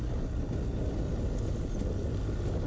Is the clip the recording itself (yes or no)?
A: yes